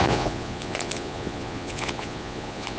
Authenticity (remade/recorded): remade